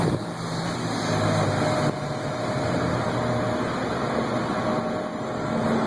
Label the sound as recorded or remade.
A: recorded